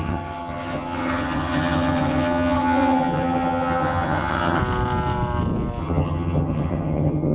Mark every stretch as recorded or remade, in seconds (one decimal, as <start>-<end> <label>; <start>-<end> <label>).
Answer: 0.0-4.6 remade; 4.6-5.8 recorded; 5.8-7.3 remade